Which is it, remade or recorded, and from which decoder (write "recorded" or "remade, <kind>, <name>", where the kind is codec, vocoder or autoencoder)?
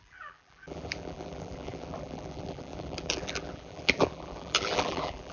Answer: remade, vocoder, BigVGAN v2